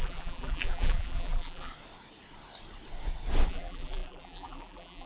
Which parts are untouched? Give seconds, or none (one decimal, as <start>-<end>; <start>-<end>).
1.7-3.5